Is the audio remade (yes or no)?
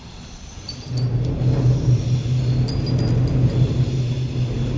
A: no